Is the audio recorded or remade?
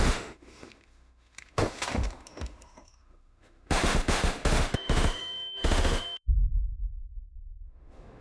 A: remade